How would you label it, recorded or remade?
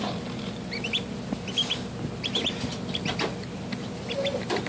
recorded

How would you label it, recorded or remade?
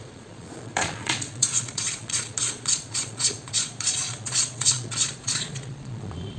remade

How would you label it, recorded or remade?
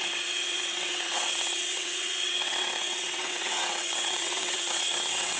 remade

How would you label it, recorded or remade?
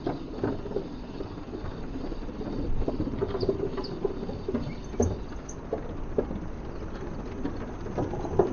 recorded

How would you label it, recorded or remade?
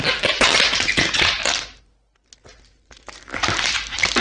recorded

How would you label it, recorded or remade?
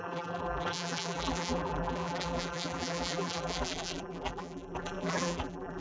remade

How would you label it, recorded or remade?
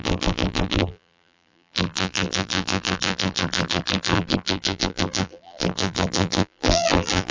remade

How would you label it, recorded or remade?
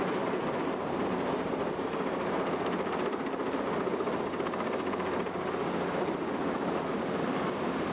recorded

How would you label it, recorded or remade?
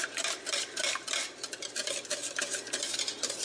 recorded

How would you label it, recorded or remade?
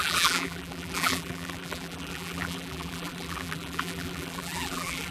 remade